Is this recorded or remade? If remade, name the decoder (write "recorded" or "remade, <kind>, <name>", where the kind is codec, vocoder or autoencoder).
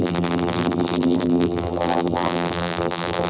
remade, vocoder, BigVGAN v2